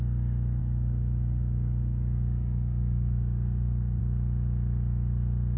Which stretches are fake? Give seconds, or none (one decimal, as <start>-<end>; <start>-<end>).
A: 0.6-4.0